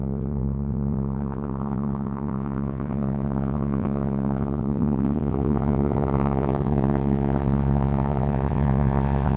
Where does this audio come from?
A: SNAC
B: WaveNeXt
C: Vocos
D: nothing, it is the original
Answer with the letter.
B